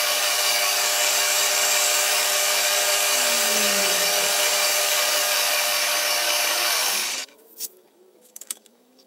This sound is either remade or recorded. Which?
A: remade